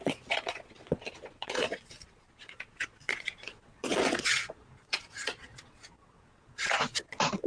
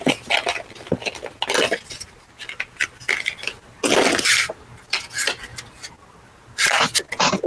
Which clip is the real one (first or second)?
second